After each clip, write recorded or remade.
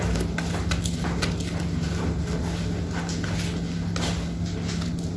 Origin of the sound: recorded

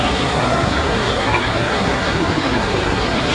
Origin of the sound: remade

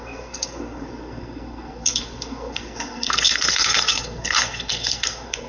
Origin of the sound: remade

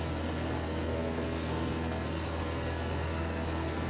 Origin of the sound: remade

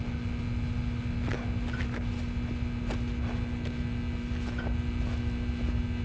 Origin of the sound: recorded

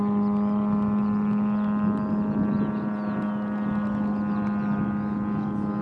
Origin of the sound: recorded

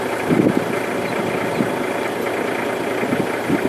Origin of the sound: recorded